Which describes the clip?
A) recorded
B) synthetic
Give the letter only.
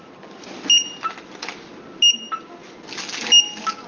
A